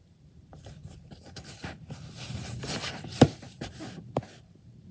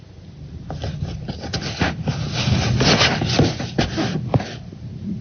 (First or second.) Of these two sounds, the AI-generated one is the first